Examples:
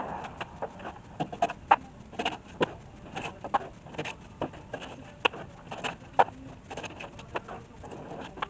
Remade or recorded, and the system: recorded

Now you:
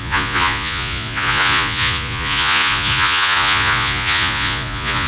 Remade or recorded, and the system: remade, vocoder, Vocos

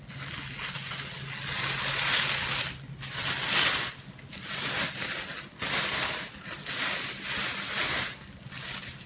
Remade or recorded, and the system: recorded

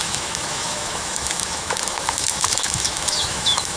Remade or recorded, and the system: remade, autoencoder, DAC-VAE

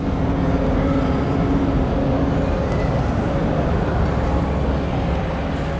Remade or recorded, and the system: recorded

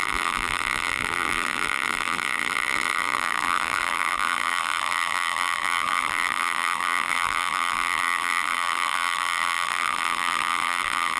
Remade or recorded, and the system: remade, vocoder, BigVGAN v2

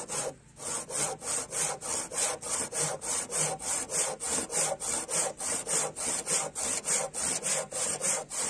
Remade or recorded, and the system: recorded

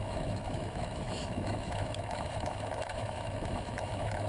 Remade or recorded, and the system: remade, autoencoder, DAC-VAE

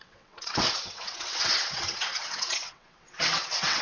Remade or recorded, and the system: remade, vocoder, WaveNeXt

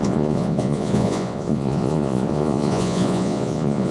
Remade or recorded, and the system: remade, vocoder, Vocos